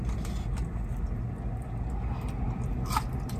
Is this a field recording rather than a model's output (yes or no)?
yes